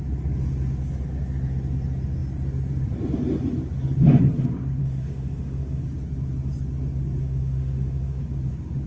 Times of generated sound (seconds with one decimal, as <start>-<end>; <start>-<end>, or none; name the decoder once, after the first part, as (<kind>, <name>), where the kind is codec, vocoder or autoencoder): 4.8-5.8 (autoencoder, DAC-VAE); 7.2-8.2